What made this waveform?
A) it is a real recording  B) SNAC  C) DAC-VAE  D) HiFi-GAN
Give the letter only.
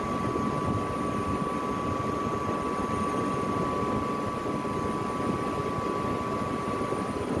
A